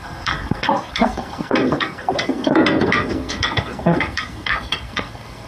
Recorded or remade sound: remade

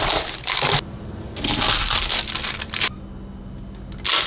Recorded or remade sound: recorded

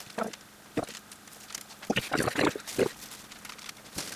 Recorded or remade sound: recorded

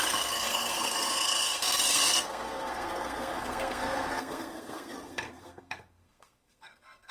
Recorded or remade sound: remade